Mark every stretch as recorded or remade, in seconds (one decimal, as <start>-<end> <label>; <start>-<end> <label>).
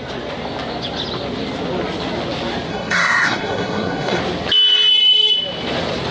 0.0-2.7 recorded; 2.7-4.2 remade; 4.2-6.1 recorded